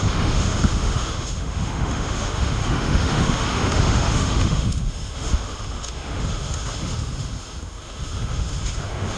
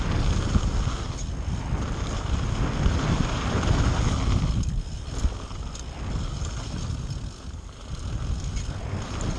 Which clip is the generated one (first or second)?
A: first